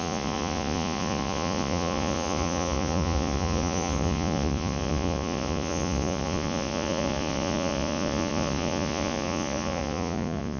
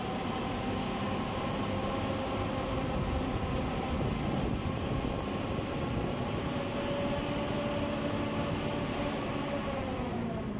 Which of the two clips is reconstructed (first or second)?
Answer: first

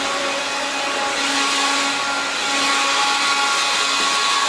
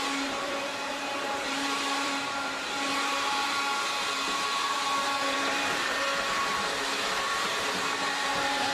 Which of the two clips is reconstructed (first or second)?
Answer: second